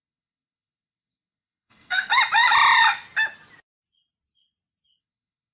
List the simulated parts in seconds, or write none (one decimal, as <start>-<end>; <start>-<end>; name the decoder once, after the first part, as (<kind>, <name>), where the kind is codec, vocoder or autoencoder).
0.0-2.1 (codec, SNAC); 5.0-5.5